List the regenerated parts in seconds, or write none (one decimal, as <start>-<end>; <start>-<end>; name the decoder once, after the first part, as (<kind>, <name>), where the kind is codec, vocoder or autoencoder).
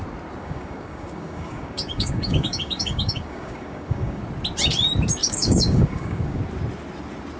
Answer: 0.4-4.2 (codec, DAC); 5.2-6.4